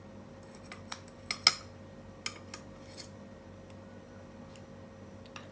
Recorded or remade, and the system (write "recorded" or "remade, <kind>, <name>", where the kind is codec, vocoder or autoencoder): recorded